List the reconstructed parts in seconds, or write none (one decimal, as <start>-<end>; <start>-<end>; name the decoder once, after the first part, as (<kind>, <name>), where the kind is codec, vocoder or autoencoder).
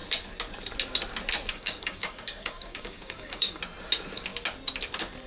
1.5-3.6 (codec, DAC)